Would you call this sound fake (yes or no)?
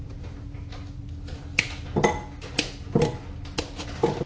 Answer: no